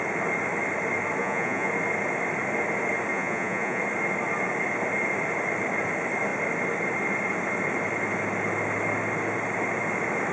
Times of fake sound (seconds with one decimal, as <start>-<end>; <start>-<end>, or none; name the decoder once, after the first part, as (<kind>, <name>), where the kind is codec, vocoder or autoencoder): 1.2-1.7 (vocoder, Vocos); 3.1-3.8